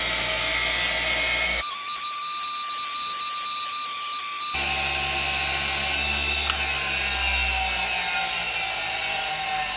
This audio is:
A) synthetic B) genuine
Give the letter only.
B